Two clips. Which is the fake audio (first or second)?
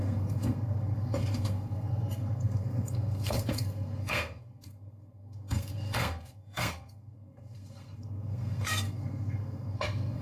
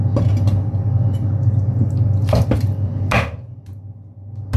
first